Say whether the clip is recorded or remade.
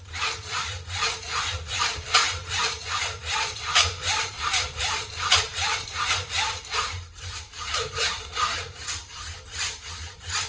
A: remade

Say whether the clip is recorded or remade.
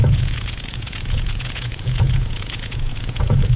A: remade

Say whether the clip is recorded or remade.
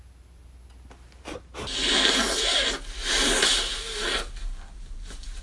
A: recorded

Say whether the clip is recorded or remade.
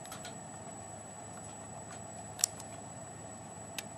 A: recorded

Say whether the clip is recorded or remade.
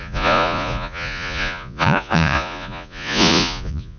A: remade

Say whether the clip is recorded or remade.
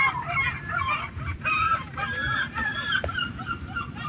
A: recorded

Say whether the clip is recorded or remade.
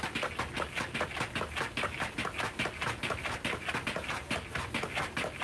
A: recorded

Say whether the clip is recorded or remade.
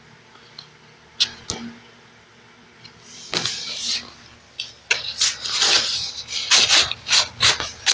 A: recorded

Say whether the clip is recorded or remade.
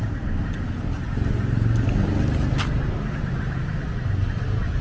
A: recorded